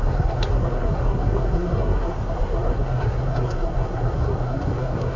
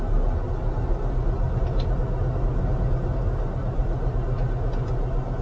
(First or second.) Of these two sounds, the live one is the second